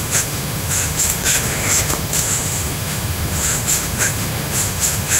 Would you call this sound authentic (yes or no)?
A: no